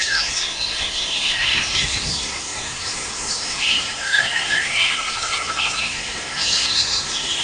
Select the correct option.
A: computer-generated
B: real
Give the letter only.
A